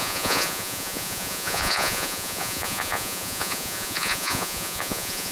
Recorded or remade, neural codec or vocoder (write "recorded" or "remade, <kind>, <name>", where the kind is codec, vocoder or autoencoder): remade, vocoder, Vocos